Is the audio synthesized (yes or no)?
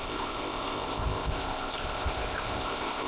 yes